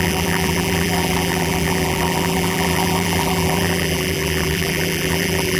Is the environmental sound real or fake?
fake